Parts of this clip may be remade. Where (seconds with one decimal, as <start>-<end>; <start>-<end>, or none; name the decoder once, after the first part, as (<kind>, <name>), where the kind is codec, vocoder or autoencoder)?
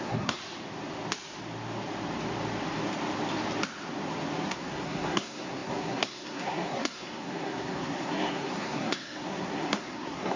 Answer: 0.0-0.4 (codec, SNAC); 4.5-10.4